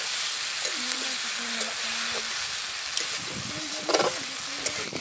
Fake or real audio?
real